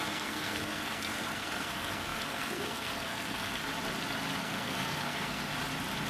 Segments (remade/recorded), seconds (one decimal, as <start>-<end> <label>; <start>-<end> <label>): 0.0-3.6 remade; 3.6-4.4 recorded; 4.4-5.5 remade; 5.5-6.1 recorded